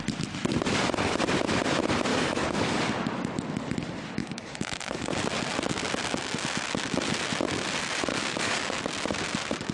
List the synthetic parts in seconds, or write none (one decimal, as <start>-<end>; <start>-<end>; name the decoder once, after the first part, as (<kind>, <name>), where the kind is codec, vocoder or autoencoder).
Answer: 2.1-2.9 (codec, DAC); 4.2-5.1; 8.1-8.8